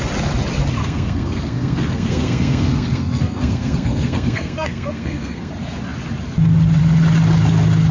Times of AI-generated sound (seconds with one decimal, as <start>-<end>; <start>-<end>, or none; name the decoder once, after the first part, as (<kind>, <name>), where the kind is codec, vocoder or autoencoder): 0.8-5.5 (codec, SNAC)